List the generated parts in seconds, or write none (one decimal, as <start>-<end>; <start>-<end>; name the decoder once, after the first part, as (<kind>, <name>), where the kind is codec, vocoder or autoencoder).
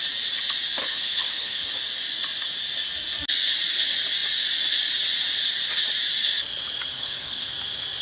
0.8-1.7 (codec, HILCodec); 6.9-7.5